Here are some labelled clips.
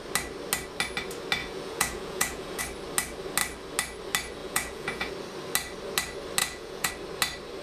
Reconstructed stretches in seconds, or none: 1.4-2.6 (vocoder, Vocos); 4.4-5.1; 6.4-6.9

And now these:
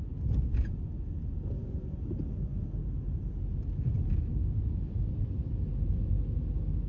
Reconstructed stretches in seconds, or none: none